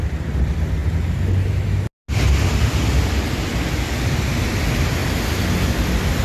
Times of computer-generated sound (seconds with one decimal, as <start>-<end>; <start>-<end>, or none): none